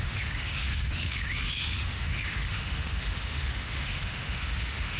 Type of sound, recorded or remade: remade